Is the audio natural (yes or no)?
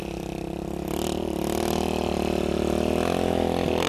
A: yes